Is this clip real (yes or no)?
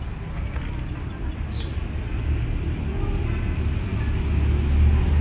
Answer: yes